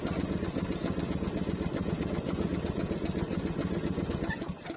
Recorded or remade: recorded